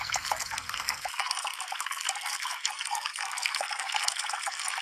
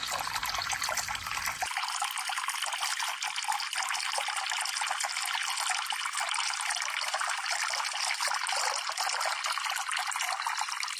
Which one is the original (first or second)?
second